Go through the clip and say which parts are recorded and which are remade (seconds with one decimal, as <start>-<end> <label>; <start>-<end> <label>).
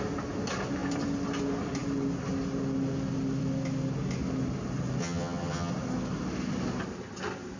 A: 0.0-5.0 recorded; 5.0-5.7 remade; 5.7-7.6 recorded